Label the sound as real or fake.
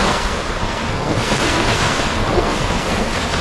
fake